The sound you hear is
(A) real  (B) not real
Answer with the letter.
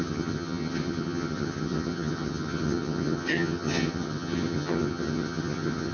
B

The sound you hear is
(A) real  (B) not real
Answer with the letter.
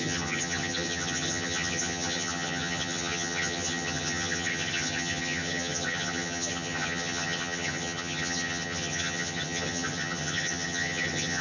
B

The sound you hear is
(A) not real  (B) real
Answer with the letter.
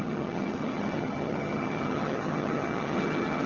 A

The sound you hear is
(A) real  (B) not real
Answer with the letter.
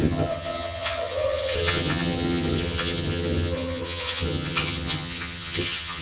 B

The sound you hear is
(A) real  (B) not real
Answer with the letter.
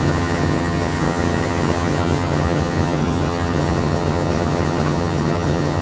B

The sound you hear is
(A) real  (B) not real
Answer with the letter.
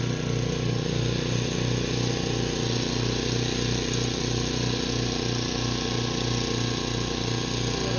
A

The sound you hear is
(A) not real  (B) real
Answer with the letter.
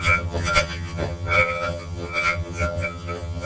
A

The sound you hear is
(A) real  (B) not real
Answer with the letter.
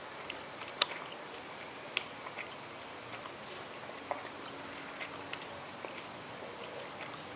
A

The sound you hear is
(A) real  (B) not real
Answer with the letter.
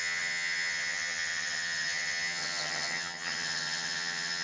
B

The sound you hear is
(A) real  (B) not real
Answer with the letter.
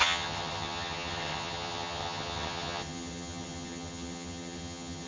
B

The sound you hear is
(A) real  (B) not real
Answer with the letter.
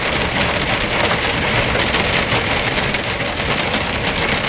A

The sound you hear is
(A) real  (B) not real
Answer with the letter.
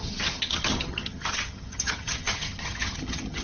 B